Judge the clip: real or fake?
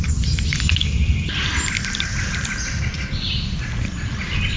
real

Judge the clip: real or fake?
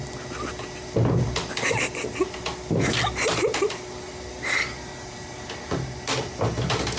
real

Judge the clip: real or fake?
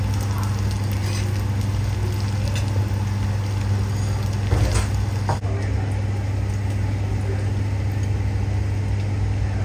real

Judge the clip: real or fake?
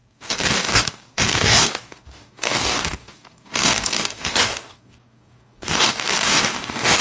fake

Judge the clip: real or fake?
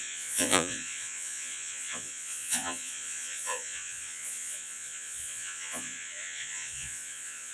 fake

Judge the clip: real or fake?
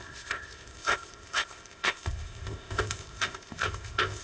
fake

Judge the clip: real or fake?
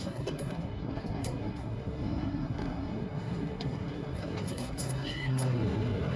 fake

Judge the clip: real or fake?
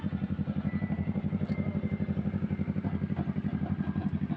real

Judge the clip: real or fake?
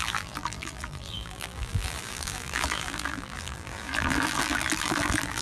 fake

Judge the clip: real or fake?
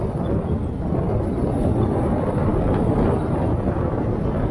real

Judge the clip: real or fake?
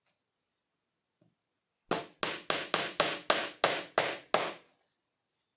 real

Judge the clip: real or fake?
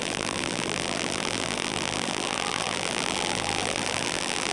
fake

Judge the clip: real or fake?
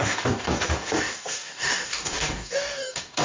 fake